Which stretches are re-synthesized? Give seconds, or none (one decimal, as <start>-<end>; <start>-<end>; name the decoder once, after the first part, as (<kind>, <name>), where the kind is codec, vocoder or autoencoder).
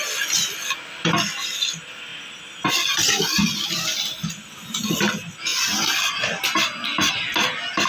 none